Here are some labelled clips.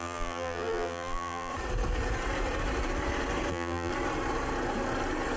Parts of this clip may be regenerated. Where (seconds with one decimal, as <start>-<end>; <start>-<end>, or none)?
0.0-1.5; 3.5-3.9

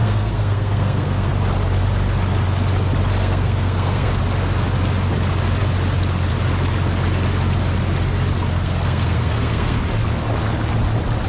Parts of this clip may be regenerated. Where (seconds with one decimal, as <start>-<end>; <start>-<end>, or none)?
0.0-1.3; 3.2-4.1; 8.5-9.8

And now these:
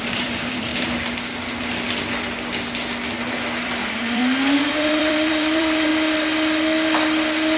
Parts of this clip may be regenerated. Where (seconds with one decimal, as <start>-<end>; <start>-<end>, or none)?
0.0-0.7; 3.6-4.2; 4.7-5.9

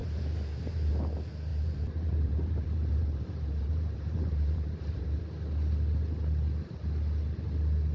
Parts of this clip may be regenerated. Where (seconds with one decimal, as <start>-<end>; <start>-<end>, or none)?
0.0-0.9; 1.5-5.2

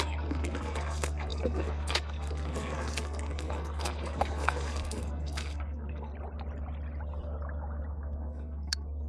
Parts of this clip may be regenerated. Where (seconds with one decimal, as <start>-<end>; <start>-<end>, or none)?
0.0-6.1; 7.9-9.1